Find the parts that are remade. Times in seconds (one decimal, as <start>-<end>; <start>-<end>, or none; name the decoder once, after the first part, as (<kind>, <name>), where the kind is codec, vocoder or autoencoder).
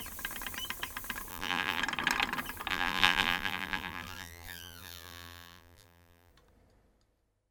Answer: 1.3-1.8 (vocoder, BigVGAN v2); 2.7-6.3